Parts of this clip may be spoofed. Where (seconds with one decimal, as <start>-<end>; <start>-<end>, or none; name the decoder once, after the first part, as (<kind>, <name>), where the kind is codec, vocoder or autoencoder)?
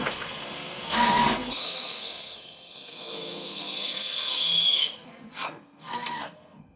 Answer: 0.0-6.8 (codec, SNAC)